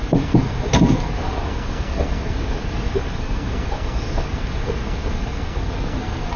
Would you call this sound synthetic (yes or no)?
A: yes